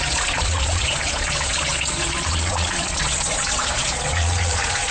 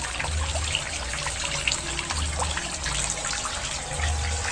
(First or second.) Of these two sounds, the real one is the second